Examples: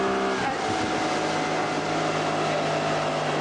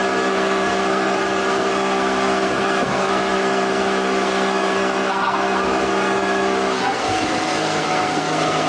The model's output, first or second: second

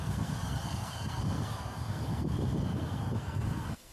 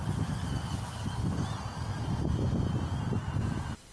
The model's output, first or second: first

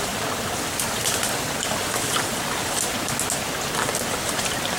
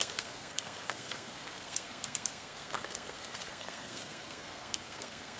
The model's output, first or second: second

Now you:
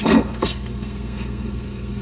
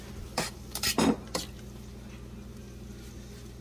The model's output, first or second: first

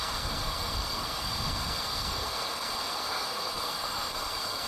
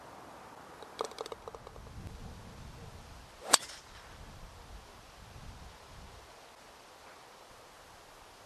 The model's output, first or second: first